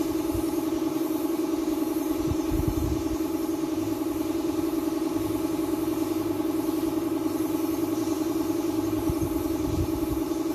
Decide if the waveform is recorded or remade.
remade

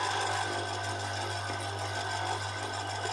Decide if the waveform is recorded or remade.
remade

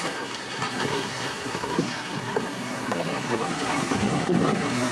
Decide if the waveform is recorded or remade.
remade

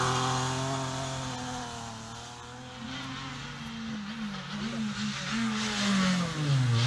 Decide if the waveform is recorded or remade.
recorded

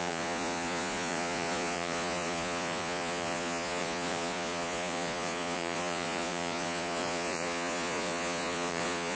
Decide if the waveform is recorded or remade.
remade